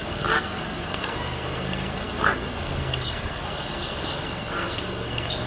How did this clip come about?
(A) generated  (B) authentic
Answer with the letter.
A